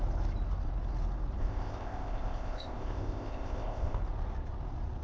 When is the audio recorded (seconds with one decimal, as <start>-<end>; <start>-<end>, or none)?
0.0-1.4; 4.0-5.0